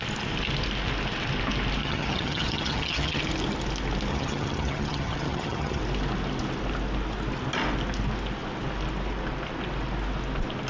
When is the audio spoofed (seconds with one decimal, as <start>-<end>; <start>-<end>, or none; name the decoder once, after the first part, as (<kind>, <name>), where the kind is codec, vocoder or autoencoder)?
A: 1.8-3.2 (vocoder, HiFi-GAN); 4.1-5.8